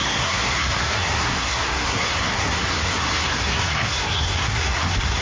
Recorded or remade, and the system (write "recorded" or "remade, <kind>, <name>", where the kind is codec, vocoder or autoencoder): remade, codec, SNAC